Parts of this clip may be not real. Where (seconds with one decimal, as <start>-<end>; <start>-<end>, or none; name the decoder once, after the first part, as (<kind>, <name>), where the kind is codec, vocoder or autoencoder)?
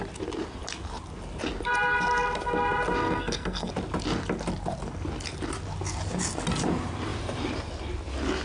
3.0-3.7 (codec, SNAC)